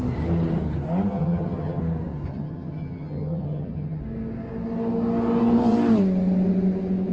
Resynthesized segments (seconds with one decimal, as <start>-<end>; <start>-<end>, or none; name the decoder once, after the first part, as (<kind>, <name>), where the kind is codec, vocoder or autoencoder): 1.1-1.8 (vocoder, HiFi-GAN); 2.3-4.0